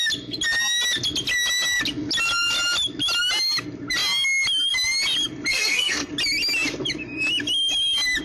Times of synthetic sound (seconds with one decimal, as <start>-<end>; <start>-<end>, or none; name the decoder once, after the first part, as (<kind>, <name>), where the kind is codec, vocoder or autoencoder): 5.5-6.1 (codec, SNAC)